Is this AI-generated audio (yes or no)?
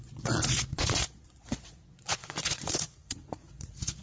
yes